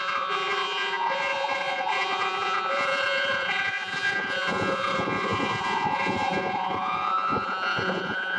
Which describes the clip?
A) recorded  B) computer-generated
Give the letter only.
B